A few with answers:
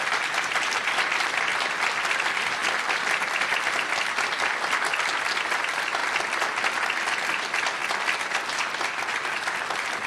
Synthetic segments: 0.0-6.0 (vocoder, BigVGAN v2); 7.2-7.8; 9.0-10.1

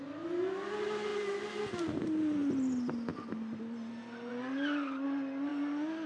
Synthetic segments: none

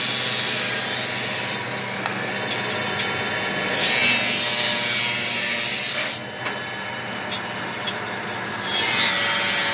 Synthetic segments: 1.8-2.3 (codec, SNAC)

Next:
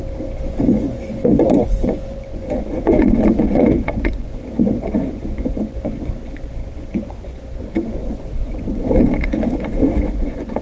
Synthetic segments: 0.0-10.6 (vocoder, Vocos)